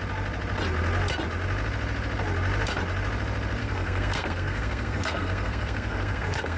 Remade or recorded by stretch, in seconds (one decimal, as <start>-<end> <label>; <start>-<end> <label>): 0.0-3.6 recorded; 3.6-6.6 remade